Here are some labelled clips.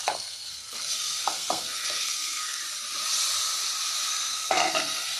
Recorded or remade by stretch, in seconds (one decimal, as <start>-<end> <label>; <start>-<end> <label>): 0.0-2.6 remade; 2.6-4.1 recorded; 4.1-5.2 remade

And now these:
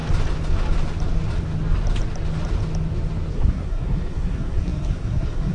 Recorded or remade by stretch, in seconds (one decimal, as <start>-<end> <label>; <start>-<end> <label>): 0.0-3.3 recorded; 3.3-5.5 remade

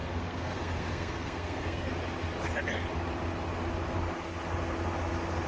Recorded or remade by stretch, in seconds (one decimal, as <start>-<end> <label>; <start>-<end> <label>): 0.0-1.9 remade; 1.9-5.5 recorded

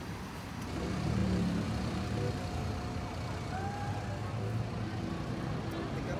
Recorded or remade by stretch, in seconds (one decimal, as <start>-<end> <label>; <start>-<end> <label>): 0.0-6.2 recorded

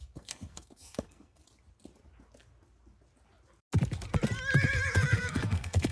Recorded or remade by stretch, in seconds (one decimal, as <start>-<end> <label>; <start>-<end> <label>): 0.0-1.4 remade; 1.4-4.9 recorded; 4.9-5.9 remade

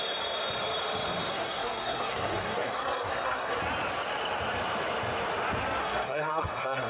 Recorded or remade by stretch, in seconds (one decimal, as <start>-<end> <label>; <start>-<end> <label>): 0.0-1.3 recorded; 1.3-3.6 remade; 3.6-5.8 recorded; 5.8-6.9 remade

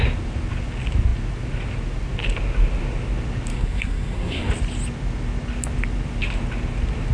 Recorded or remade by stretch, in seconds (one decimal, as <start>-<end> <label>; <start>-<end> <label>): 0.0-3.5 recorded; 3.5-4.5 remade; 4.5-7.1 recorded